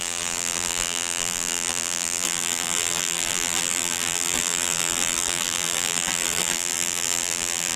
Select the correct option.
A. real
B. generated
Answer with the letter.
B